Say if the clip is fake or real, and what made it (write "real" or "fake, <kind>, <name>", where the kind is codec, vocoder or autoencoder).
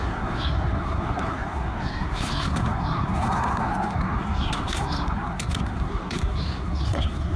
fake, codec, SNAC